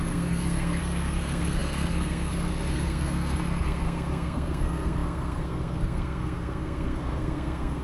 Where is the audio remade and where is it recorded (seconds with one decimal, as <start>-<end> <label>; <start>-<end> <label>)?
0.0-7.8 remade